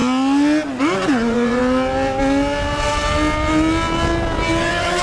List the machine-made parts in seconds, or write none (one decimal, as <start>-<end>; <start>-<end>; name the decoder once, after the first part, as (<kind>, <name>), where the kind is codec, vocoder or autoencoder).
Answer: 0.8-1.6 (vocoder, Vocos); 4.6-5.0